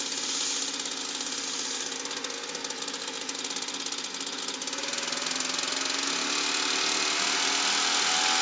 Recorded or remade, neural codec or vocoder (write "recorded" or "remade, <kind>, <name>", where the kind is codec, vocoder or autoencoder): recorded